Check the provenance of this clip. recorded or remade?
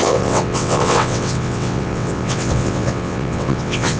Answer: remade